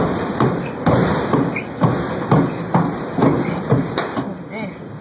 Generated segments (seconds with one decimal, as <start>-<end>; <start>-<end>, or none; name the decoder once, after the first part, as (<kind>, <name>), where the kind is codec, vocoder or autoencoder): none